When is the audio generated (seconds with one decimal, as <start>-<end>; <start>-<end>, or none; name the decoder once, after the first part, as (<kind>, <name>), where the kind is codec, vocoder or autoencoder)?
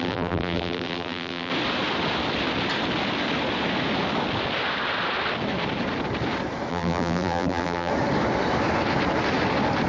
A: 0.0-1.5 (vocoder, BigVGAN v2); 6.7-7.9